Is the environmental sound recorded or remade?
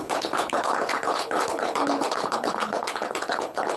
remade